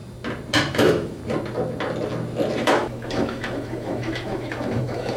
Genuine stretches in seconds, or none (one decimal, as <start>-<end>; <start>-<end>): 0.0-0.7; 1.2-2.6